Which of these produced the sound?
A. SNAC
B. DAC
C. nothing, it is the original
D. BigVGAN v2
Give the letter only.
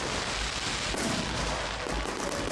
C